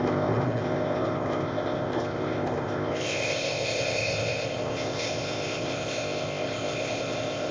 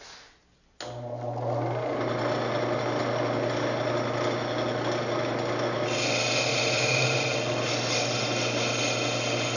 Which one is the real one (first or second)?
second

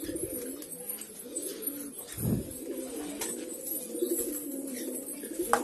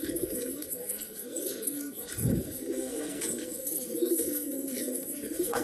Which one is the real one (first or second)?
first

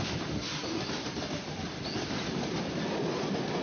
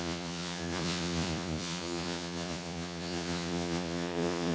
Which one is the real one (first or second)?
first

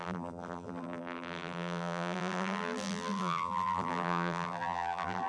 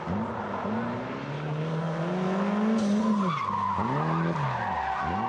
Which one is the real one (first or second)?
second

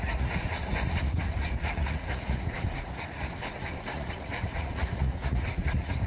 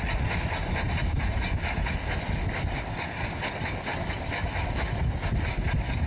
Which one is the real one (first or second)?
second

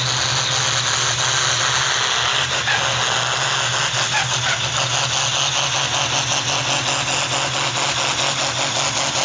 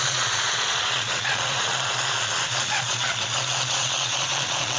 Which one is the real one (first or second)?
first